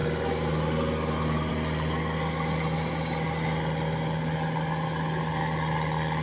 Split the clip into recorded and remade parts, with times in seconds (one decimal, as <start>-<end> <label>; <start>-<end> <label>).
0.0-6.2 recorded